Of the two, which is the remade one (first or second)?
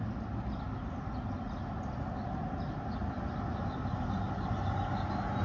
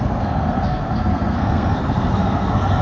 second